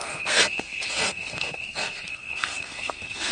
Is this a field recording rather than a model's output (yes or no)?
no